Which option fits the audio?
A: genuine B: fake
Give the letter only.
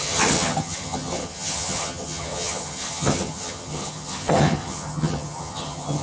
B